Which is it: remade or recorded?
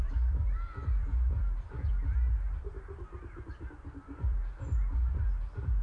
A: remade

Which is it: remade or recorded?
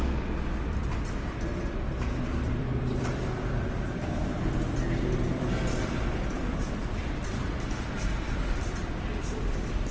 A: remade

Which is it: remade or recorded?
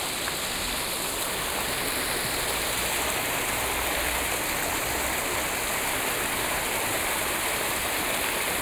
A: recorded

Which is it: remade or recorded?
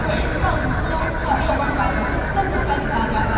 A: recorded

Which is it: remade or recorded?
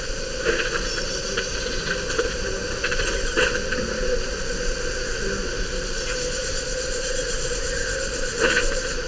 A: remade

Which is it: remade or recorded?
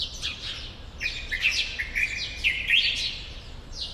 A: recorded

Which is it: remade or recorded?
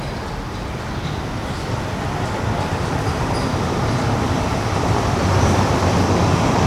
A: recorded